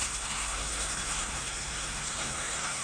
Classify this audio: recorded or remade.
remade